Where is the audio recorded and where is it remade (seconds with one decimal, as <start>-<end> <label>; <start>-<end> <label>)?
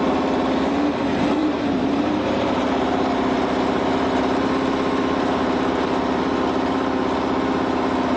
0.0-1.4 recorded; 1.4-6.2 remade; 6.2-8.2 recorded